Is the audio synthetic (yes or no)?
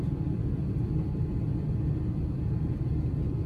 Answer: no